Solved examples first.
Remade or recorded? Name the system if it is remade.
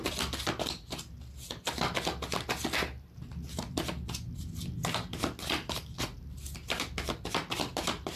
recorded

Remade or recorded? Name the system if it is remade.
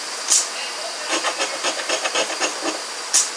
recorded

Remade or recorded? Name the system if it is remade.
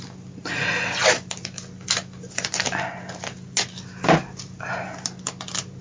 recorded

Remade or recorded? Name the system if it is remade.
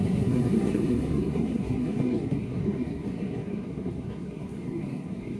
remade, codec, SNAC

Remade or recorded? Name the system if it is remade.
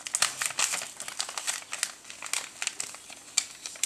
recorded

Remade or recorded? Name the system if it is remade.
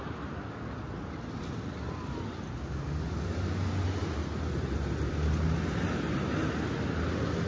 recorded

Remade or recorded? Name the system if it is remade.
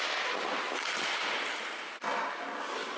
recorded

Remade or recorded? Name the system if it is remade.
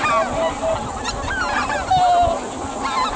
recorded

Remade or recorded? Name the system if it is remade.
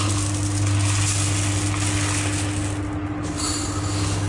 recorded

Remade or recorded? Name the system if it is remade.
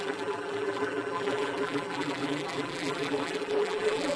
remade, vocoder, BigVGAN v2